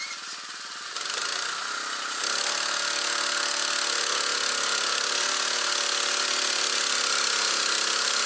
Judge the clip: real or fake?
real